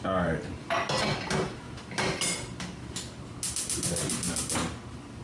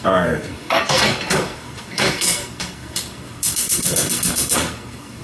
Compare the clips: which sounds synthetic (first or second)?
second